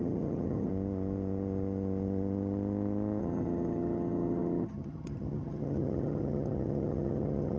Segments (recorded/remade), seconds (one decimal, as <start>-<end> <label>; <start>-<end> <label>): 0.0-0.7 remade; 0.7-3.2 recorded; 3.2-7.6 remade